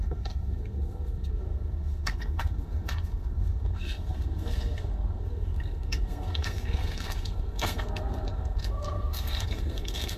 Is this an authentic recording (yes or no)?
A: no